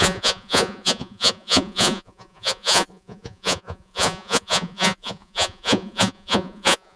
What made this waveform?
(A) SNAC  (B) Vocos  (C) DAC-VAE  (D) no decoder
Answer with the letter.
B